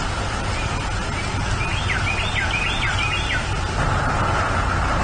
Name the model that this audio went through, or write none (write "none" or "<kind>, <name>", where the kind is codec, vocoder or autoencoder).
none